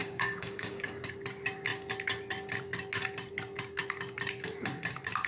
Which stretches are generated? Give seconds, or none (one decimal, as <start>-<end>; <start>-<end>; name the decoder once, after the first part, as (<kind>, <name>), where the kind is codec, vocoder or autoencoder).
0.0-1.0 (codec, DAC)